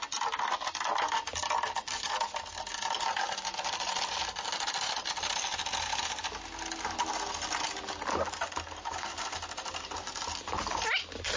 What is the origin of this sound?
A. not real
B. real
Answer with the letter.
B